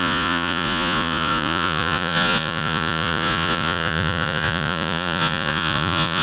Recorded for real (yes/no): no